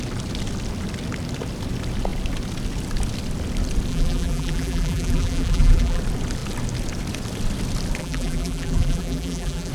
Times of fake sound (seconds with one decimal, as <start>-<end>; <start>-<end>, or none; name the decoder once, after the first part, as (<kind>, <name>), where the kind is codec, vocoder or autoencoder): 3.9-6.0 (vocoder, BigVGAN v2); 8.0-9.7